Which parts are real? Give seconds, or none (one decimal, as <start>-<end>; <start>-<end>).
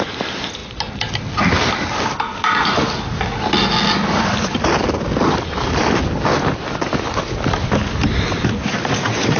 0.0-9.4